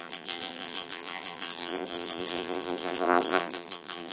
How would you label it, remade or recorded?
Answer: remade